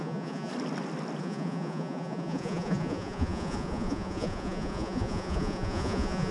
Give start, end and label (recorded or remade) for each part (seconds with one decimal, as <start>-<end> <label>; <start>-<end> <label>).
0.0-0.5 remade; 0.5-1.2 recorded; 1.2-6.3 remade